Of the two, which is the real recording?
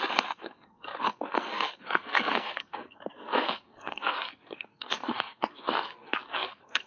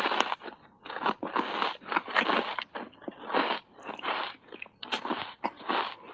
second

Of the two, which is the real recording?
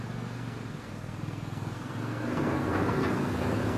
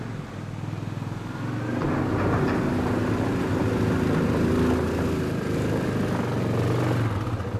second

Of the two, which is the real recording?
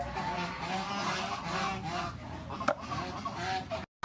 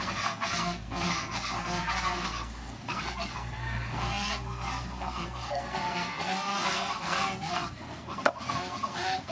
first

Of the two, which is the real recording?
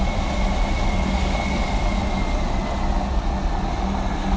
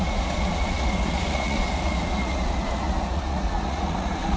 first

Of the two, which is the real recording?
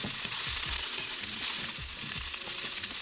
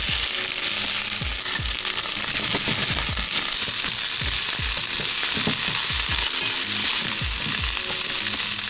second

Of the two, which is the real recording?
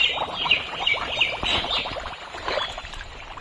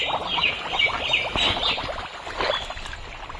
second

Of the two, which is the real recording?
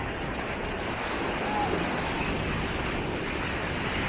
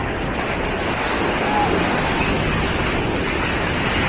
second